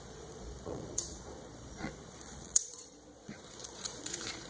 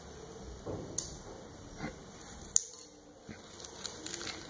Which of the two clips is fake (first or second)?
first